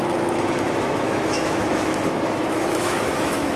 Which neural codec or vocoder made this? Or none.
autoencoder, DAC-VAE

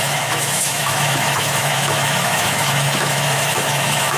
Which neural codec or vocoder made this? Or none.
autoencoder, DAC-VAE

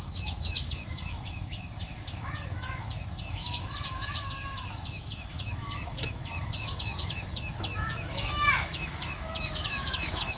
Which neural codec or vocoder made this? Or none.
autoencoder, DAC-VAE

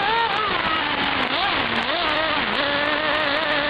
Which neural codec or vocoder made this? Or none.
none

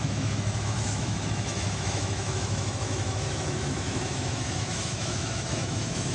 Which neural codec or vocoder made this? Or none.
autoencoder, DAC-VAE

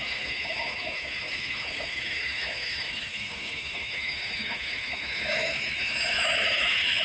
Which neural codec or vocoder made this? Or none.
autoencoder, DAC-VAE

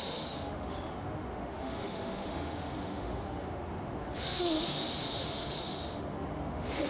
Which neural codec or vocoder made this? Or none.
autoencoder, DAC-VAE